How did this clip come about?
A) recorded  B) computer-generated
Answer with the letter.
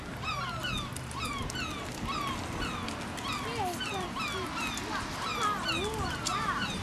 A